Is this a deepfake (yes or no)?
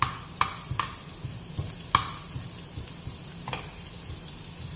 no